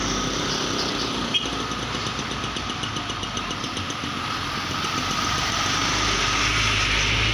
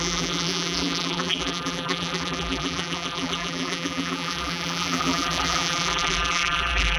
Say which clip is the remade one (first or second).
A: second